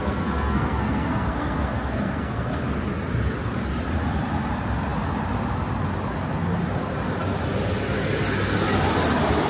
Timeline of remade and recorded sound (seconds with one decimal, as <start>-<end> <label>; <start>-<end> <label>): 0.0-2.6 remade; 2.6-9.5 recorded